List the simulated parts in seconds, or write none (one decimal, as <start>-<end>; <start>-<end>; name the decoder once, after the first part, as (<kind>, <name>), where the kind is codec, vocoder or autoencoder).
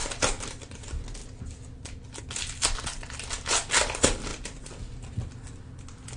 0.0-0.7 (vocoder, BigVGAN v2); 4.3-5.3